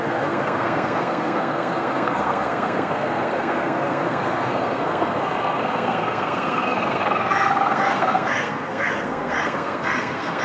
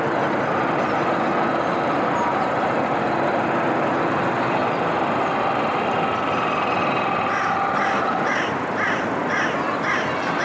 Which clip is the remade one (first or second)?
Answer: first